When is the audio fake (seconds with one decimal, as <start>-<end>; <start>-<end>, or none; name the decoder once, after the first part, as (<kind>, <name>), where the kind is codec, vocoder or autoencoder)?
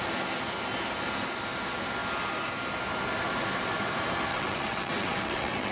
4.3-5.7 (vocoder, WaveNeXt)